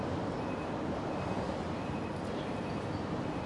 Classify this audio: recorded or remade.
recorded